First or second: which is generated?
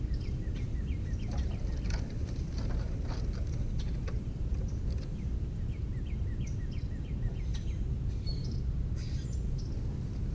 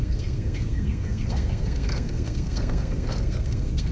second